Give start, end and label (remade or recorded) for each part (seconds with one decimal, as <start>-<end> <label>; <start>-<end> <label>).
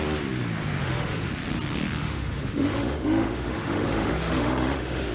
0.0-0.8 recorded; 0.8-1.3 remade; 1.3-2.0 recorded; 2.0-5.1 remade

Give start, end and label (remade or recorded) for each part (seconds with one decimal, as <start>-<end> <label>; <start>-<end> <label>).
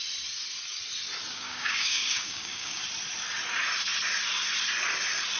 0.0-1.3 recorded; 1.3-2.8 remade; 2.8-5.4 recorded